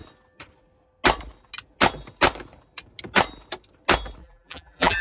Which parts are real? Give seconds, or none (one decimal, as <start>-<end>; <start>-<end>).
0.0-4.2